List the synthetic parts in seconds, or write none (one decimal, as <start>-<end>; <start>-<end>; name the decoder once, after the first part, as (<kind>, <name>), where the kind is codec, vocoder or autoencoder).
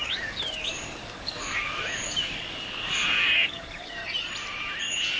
0.0-4.0 (codec, DAC); 4.8-5.2